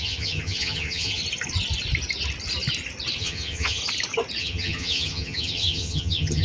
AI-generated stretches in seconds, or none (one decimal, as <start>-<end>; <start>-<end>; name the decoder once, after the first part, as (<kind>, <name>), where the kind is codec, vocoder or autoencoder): 0.0-1.2 (vocoder, HiFi-GAN); 3.2-3.8; 4.4-6.4